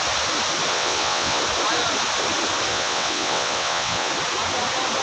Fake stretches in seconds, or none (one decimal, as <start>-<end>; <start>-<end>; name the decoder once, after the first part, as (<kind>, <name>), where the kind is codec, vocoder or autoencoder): 0.7-1.4 (vocoder, WaveNeXt); 2.7-4.1